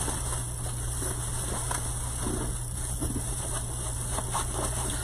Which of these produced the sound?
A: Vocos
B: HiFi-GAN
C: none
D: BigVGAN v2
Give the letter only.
C